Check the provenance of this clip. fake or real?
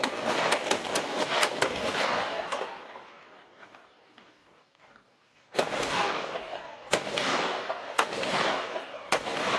fake